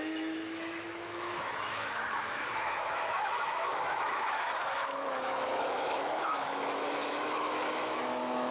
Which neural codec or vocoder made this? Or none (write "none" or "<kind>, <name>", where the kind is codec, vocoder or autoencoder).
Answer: autoencoder, DAC-VAE